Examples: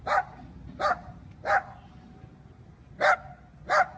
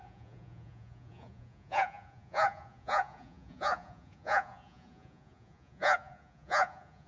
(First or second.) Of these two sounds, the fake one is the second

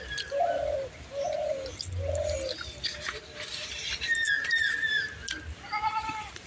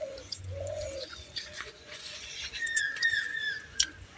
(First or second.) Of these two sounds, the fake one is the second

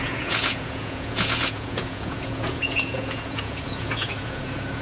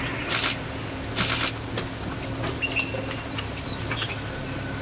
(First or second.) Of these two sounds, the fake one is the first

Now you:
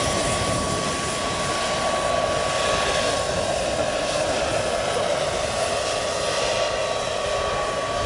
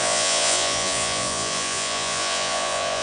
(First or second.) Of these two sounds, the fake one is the second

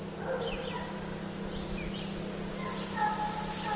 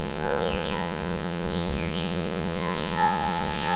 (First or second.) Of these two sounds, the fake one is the second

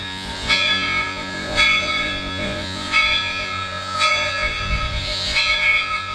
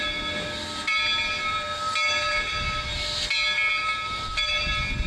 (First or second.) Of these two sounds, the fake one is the first